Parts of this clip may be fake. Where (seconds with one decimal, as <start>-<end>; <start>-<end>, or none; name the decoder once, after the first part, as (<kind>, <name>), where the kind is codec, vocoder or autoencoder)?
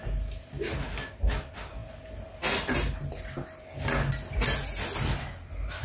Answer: none